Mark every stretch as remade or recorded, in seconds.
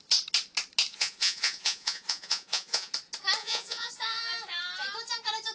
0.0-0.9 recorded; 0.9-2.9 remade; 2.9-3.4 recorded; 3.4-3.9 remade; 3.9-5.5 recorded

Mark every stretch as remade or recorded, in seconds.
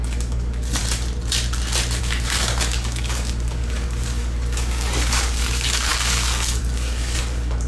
0.0-0.8 remade; 0.8-2.0 recorded; 2.0-7.7 remade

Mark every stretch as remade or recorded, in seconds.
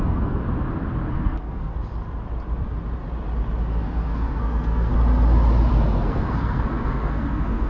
0.0-0.4 remade; 0.4-1.1 recorded; 1.1-1.7 remade; 1.7-3.7 recorded; 3.7-4.9 remade; 4.9-5.7 recorded; 5.7-7.7 remade